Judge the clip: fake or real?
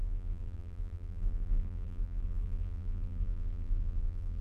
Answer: fake